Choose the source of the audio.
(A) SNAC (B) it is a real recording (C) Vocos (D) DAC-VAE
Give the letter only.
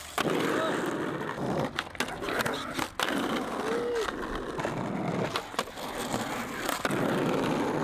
B